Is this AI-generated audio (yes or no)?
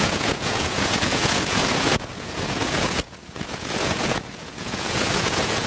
yes